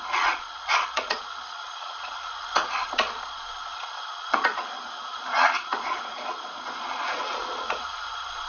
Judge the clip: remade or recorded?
remade